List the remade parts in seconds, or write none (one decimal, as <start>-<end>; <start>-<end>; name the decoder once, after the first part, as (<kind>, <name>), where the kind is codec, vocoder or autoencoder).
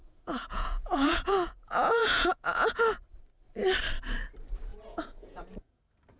0.0-2.8 (vocoder, Vocos); 4.7-5.8